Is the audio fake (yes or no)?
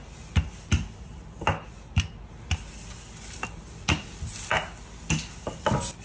no